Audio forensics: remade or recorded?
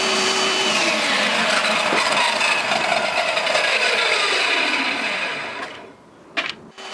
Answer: recorded